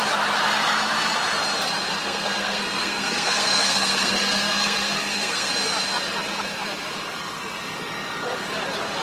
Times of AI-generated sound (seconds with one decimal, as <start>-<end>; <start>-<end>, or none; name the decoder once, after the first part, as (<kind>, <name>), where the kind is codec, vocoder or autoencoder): 2.0-5.5 (codec, SNAC)